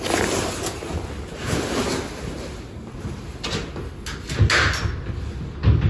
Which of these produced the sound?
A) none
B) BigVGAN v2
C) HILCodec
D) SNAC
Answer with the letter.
A